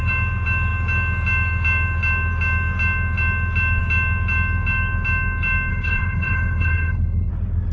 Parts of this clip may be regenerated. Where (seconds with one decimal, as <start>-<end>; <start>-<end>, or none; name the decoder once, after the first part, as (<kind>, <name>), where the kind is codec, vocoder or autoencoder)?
5.7-7.3 (codec, HILCodec)